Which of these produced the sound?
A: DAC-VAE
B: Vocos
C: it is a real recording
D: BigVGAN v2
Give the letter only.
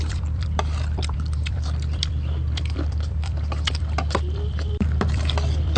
D